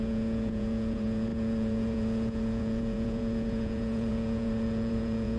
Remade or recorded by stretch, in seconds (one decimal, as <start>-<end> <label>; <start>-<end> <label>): 0.0-5.4 remade